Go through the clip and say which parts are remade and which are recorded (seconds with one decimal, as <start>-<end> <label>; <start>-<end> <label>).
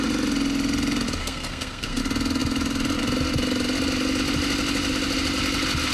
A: 0.0-1.2 recorded; 1.2-2.0 remade; 2.0-5.9 recorded